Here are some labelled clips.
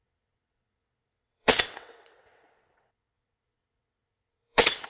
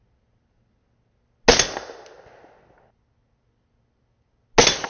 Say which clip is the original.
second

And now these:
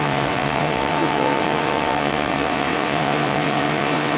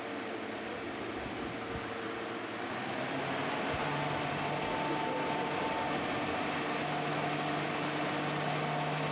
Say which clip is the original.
second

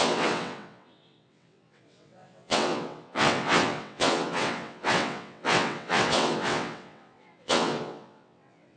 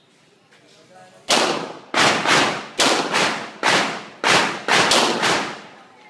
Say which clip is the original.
second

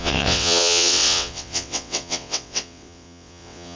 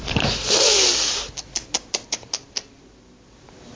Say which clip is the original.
second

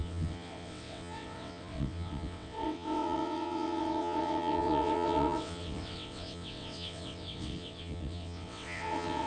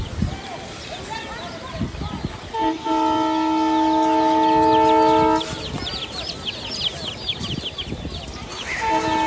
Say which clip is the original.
second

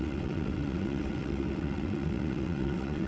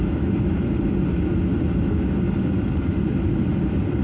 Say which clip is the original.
second